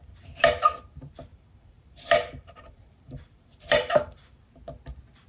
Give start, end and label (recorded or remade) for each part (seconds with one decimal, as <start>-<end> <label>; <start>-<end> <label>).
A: 0.0-1.3 recorded; 1.3-4.5 remade; 4.5-5.3 recorded